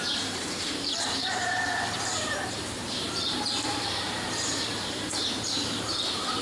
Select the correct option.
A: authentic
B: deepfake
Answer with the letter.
B